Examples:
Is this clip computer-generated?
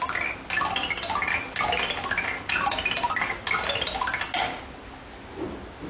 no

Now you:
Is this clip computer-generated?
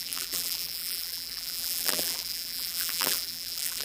yes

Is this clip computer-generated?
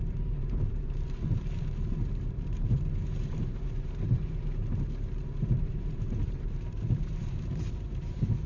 yes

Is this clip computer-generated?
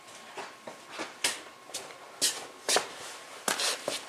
no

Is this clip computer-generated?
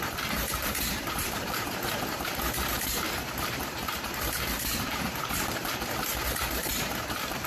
yes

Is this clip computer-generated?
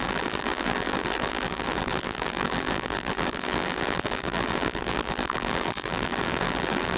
yes